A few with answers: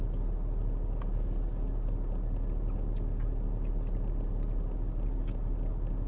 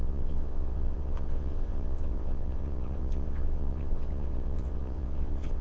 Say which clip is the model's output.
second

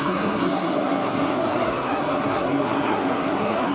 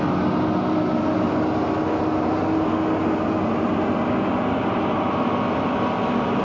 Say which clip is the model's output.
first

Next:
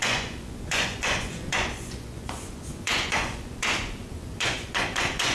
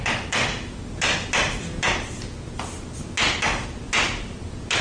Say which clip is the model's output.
first